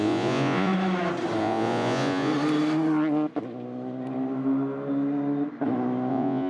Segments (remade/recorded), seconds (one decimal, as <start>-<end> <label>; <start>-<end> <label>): 0.0-0.7 remade; 0.7-1.4 recorded; 1.4-2.3 remade; 2.3-6.1 recorded; 6.1-6.5 remade